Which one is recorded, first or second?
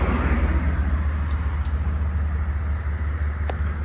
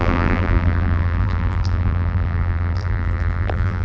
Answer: first